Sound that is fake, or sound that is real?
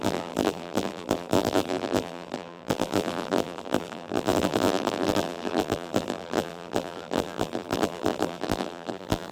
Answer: fake